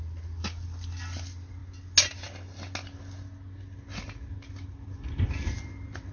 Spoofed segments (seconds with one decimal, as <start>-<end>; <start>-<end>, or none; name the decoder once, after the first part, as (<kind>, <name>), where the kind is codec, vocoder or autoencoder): none